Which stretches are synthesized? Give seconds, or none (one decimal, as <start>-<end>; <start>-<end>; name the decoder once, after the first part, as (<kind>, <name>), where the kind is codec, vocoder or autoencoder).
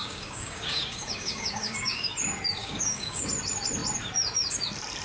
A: 0.0-2.1 (codec, DAC); 2.6-3.3